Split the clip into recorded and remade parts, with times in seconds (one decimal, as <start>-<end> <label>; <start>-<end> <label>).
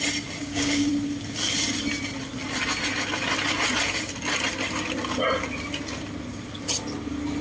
0.0-0.4 recorded; 0.4-0.9 remade; 0.9-7.4 recorded